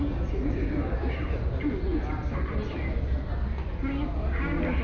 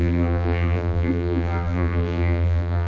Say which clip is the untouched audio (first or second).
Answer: first